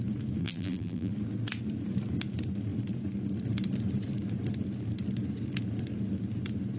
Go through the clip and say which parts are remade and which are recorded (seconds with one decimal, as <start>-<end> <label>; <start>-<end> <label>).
0.0-0.4 recorded; 0.4-1.1 remade; 1.1-6.8 recorded